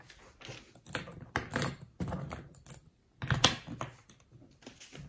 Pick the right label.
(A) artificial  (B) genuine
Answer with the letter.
B